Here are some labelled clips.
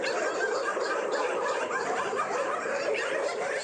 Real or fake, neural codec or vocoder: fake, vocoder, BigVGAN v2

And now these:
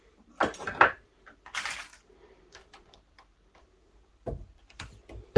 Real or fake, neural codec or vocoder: fake, vocoder, BigVGAN v2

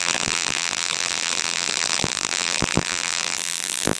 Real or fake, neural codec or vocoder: fake, vocoder, BigVGAN v2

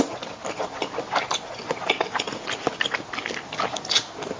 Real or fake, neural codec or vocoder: real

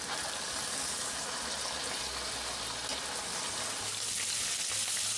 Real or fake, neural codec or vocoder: real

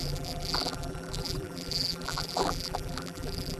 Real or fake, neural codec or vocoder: fake, vocoder, BigVGAN v2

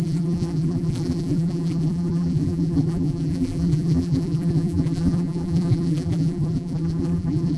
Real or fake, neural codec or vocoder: fake, vocoder, BigVGAN v2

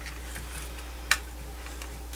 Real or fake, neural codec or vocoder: real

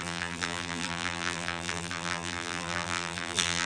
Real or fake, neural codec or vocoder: fake, vocoder, BigVGAN v2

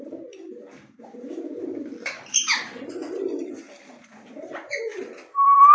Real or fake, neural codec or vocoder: fake, vocoder, BigVGAN v2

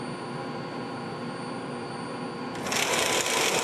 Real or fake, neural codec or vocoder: fake, vocoder, BigVGAN v2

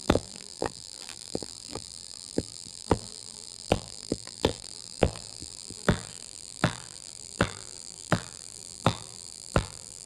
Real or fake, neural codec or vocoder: fake, vocoder, BigVGAN v2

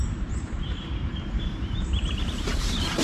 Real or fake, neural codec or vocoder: fake, vocoder, BigVGAN v2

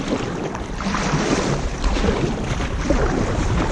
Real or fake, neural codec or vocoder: fake, vocoder, BigVGAN v2